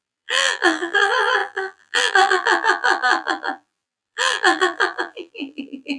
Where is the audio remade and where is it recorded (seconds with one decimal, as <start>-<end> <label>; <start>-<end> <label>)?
0.0-6.0 remade